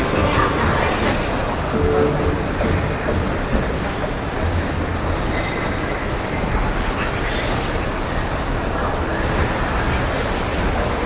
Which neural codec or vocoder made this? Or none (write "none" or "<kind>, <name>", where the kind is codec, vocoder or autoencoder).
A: none